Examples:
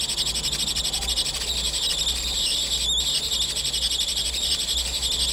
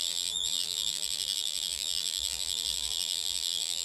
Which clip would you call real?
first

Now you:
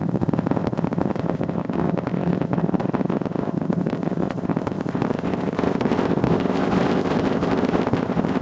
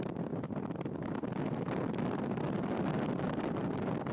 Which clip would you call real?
second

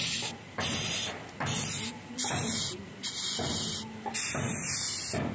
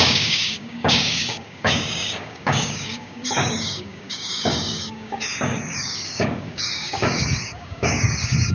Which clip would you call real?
first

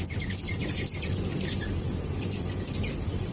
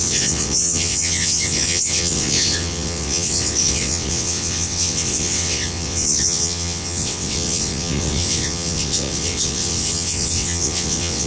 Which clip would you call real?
first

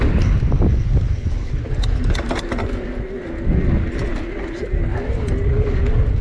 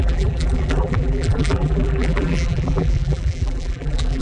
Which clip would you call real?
first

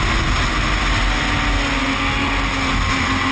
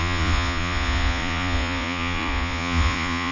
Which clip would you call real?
first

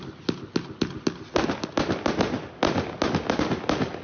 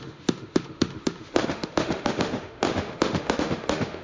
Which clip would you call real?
first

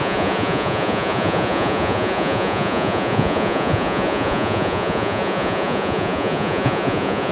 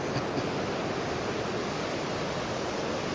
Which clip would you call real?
second